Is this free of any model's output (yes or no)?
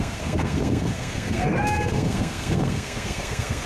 no